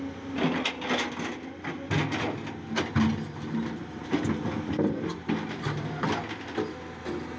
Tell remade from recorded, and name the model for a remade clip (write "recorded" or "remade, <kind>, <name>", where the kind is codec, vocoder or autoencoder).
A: recorded